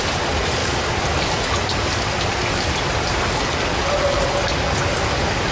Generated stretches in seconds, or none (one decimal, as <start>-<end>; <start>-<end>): none